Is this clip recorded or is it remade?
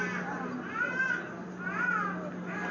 recorded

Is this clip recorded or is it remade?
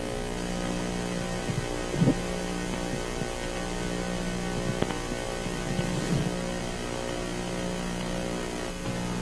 recorded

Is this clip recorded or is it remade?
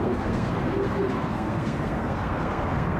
remade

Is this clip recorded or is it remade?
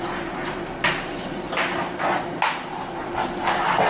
recorded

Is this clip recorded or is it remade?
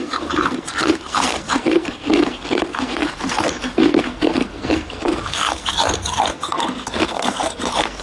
remade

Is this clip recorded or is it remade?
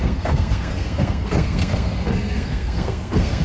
remade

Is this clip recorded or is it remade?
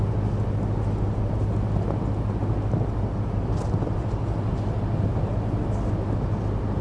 recorded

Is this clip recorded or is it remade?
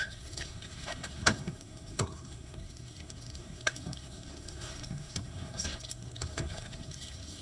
remade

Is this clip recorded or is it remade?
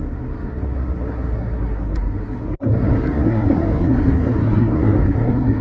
remade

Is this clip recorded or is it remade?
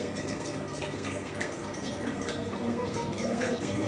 remade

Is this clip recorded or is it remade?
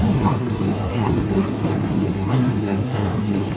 remade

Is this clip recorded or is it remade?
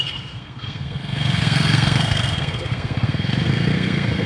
remade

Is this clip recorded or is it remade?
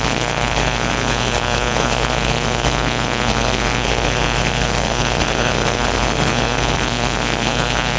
remade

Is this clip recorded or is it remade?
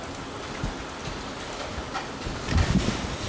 recorded